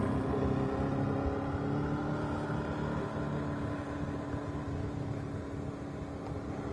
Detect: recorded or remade recorded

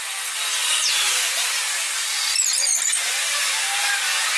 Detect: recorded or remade recorded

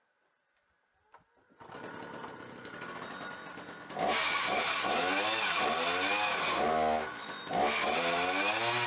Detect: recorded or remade recorded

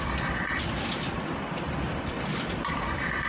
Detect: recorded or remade recorded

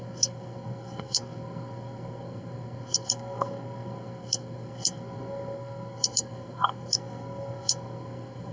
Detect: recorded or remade remade